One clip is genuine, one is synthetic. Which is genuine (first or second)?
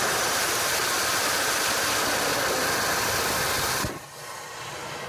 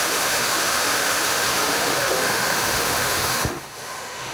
first